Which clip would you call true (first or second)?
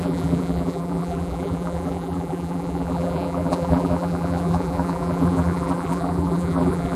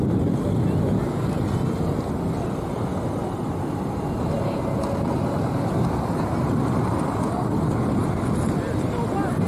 second